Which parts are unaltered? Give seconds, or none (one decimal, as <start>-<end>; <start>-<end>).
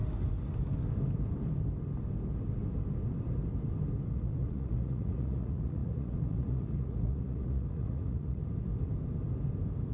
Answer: 0.0-4.1; 8.4-9.9